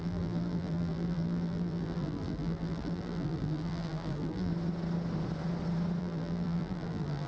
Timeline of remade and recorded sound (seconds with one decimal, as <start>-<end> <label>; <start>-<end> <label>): 0.0-4.5 remade; 4.5-6.0 recorded; 6.0-7.3 remade